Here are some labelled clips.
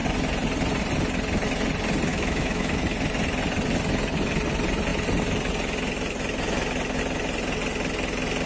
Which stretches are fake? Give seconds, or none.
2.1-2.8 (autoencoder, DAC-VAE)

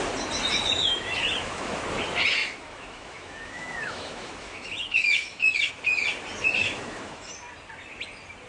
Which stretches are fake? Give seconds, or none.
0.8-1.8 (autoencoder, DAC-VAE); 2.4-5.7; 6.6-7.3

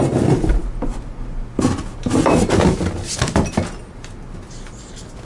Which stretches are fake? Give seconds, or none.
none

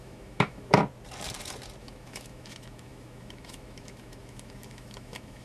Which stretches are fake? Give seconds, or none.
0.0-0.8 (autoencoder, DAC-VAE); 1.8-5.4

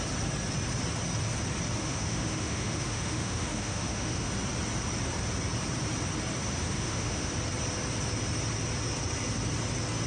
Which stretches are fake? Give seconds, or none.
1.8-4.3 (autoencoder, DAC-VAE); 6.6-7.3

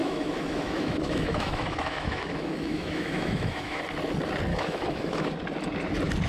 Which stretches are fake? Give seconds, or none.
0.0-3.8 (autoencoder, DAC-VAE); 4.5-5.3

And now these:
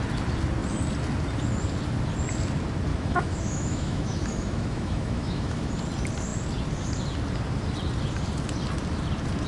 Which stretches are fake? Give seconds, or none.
2.9-5.7 (autoencoder, DAC-VAE)